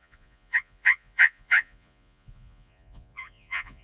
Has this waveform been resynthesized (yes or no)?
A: yes